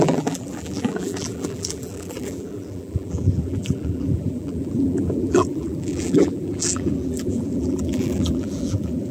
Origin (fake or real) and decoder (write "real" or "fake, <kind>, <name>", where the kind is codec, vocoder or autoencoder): fake, vocoder, BigVGAN v2